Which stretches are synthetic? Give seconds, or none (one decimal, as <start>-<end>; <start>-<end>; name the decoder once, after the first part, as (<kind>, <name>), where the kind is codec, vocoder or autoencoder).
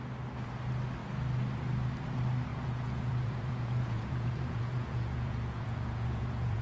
2.5-6.6 (vocoder, Vocos)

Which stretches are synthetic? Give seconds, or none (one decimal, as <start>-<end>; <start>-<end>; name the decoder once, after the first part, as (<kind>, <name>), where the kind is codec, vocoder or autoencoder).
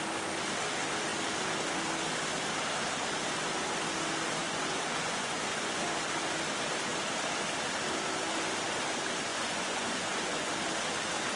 4.4-5.8 (vocoder, Vocos); 9.3-10.5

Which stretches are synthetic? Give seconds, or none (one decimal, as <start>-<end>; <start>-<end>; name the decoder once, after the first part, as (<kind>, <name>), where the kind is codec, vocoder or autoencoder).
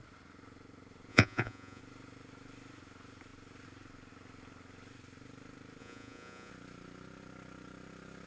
1.1-1.8 (vocoder, Vocos); 5.8-6.5